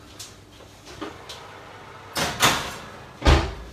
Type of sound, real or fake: real